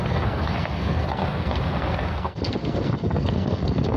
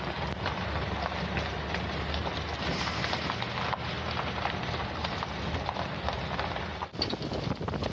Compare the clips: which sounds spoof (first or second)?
first